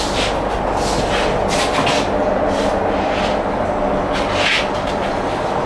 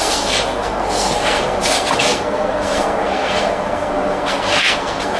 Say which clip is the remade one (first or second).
second